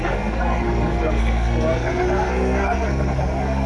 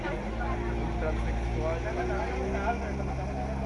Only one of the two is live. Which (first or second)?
second